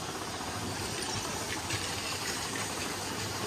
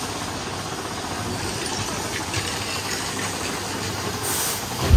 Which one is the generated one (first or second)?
first